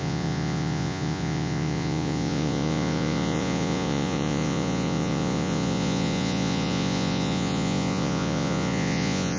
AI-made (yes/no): yes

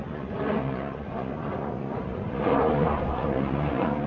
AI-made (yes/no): yes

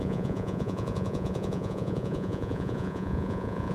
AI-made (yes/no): yes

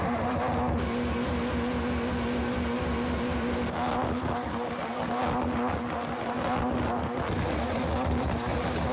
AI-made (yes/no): no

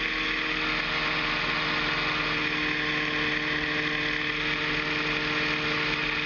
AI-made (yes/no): no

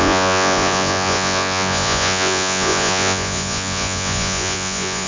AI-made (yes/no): yes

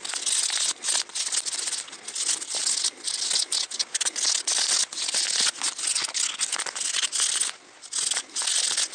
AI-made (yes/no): no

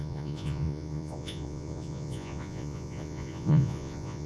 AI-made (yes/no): yes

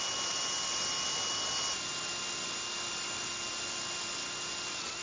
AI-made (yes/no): no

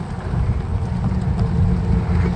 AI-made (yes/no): no